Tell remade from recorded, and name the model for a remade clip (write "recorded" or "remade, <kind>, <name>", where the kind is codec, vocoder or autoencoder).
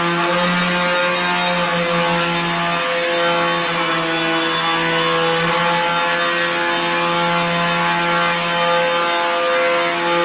recorded